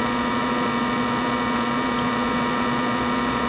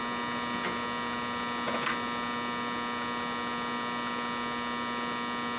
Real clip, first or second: second